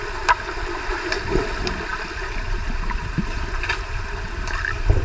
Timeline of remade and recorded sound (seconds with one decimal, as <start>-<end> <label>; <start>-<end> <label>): 0.0-5.0 recorded